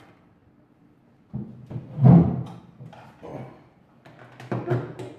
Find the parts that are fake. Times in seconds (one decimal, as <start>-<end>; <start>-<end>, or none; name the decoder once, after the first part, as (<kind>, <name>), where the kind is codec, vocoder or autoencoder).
none

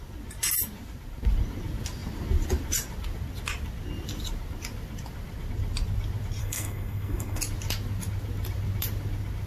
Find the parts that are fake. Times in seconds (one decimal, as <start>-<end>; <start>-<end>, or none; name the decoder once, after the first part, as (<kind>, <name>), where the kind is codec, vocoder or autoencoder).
6.4-7.4 (codec, SNAC)

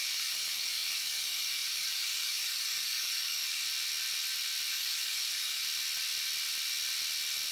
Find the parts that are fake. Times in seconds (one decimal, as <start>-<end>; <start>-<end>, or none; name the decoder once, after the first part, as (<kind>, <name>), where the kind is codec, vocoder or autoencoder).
0.0-3.6 (codec, DAC); 4.7-5.6

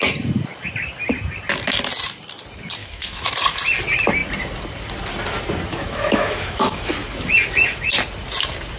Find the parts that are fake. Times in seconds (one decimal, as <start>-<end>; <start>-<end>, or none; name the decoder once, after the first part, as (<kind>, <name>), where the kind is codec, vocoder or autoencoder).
2.8-3.3 (autoencoder, DAC-VAE); 5.7-6.8

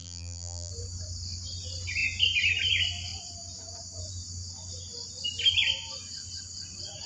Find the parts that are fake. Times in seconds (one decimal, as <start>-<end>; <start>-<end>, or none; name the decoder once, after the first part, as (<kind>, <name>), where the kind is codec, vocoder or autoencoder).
0.0-0.7 (vocoder, BigVGAN v2)

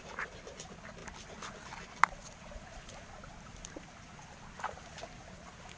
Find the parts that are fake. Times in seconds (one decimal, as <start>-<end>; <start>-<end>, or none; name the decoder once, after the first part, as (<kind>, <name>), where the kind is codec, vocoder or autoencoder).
none

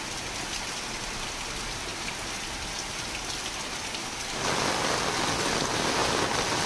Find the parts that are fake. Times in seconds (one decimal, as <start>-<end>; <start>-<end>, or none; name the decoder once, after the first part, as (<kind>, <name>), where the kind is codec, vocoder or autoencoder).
none